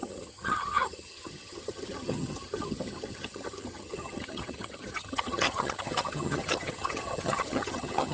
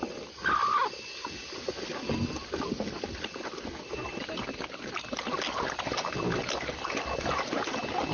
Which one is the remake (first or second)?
first